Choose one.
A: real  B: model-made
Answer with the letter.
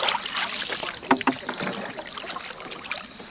A